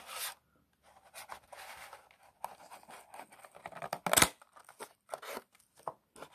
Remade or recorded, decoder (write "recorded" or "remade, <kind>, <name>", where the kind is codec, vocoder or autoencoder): recorded